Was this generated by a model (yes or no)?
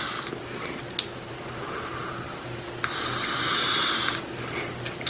no